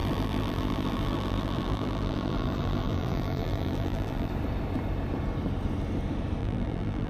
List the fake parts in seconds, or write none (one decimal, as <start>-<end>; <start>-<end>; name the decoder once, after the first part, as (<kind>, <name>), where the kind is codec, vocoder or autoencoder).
0.0-4.3 (vocoder, BigVGAN v2); 6.4-7.1